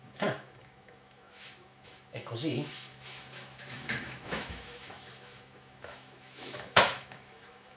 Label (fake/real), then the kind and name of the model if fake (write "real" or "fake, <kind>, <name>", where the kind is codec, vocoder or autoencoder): fake, autoencoder, DAC-VAE